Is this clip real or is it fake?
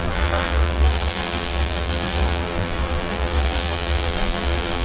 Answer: fake